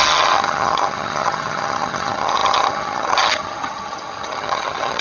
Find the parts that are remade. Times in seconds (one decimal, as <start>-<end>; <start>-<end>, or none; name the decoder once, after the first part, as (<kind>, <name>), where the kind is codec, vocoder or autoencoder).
0.0-5.0 (vocoder, HiFi-GAN)